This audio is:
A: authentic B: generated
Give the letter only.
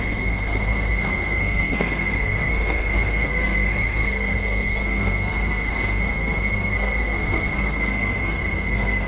B